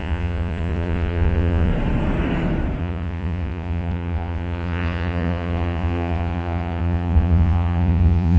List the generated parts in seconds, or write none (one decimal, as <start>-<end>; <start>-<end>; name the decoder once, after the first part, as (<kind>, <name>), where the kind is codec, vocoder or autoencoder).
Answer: 0.0-1.7 (vocoder, Vocos); 2.8-8.4